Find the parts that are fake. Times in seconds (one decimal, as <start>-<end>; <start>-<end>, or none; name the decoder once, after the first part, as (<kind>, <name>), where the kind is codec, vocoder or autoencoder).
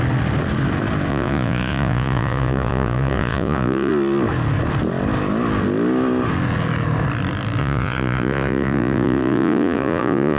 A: 1.1-3.9 (vocoder, Vocos); 7.6-10.4